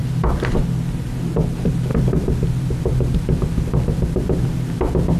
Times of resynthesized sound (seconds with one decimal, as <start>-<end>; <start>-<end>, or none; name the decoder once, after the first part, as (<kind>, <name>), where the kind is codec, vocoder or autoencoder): none